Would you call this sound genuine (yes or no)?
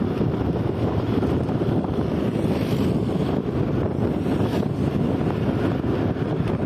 yes